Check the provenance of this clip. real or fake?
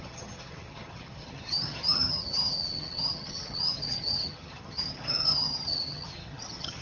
fake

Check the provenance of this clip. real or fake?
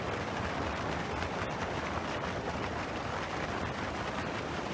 real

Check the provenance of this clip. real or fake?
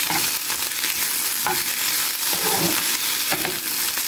fake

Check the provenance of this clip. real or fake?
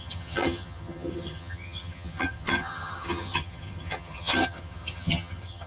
fake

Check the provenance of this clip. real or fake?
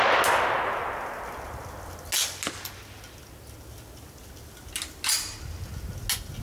real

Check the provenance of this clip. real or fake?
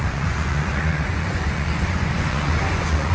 fake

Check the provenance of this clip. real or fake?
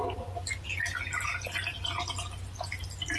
real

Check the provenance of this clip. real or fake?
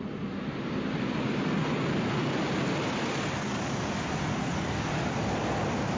real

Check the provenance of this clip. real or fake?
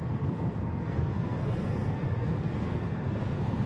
fake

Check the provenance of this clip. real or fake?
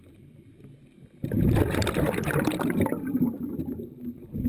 real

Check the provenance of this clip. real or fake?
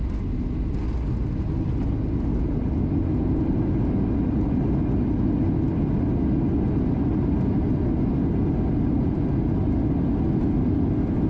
real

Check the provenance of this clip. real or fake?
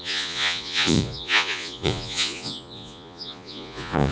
fake